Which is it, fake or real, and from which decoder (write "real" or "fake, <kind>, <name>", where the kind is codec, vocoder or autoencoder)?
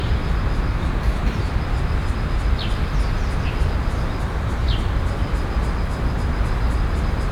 real